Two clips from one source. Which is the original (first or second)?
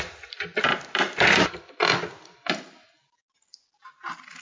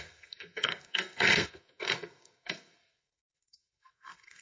first